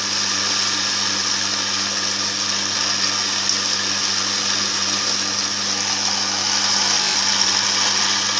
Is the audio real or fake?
real